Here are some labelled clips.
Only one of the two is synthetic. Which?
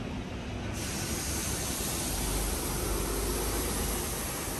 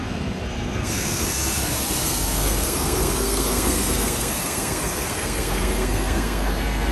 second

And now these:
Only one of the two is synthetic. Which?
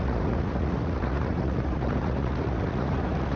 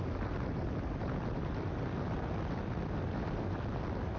first